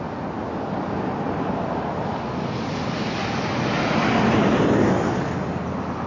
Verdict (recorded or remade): recorded